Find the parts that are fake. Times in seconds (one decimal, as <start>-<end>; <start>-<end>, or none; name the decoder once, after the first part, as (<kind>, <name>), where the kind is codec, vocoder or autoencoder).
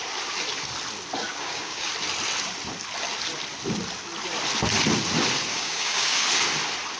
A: 1.3-1.9 (codec, DAC); 5.5-6.3